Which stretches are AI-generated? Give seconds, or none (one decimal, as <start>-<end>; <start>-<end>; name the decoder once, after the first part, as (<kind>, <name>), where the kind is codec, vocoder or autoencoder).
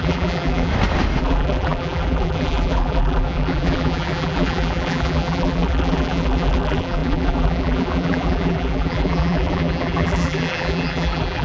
0.0-0.7 (vocoder, BigVGAN v2); 1.2-11.4